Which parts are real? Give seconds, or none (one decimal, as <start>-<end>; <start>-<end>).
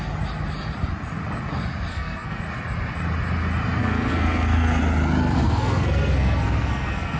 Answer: 0.0-1.9; 2.4-3.8; 4.8-5.2